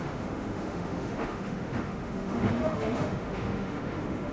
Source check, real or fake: fake